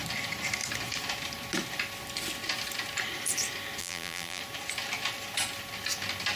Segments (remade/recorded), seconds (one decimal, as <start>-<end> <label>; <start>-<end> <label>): 0.0-3.8 recorded; 3.8-4.4 remade; 4.4-6.4 recorded